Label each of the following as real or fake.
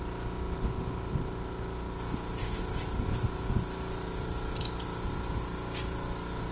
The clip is real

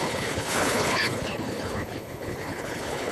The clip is fake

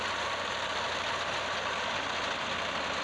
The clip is real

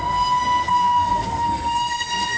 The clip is fake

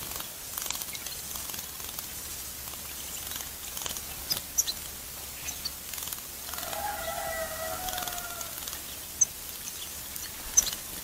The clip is real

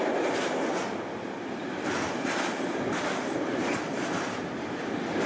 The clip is real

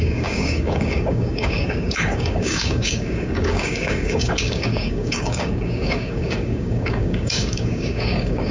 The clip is fake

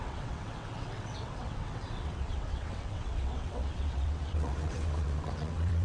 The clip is fake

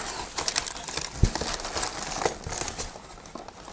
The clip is real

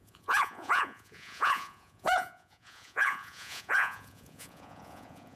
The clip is fake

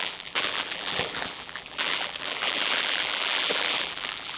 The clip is fake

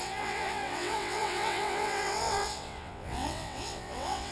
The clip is fake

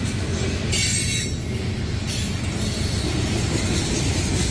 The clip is real